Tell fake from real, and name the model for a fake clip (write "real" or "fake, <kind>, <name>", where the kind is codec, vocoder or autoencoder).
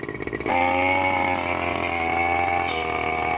real